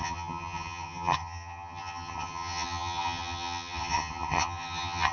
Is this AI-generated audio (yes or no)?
yes